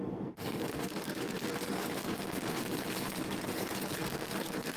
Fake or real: fake